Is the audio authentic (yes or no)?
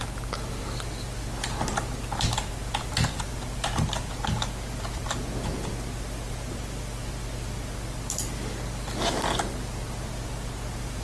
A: yes